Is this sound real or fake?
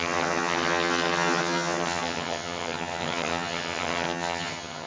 fake